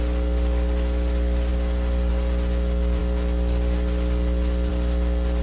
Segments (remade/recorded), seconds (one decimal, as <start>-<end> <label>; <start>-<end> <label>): 0.0-5.4 recorded